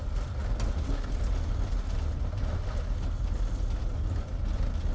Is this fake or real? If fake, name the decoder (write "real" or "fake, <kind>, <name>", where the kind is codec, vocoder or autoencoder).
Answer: real